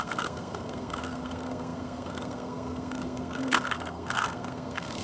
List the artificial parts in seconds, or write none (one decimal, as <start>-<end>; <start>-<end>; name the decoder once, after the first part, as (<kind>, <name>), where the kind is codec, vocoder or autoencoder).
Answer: 0.0-5.0 (codec, SNAC)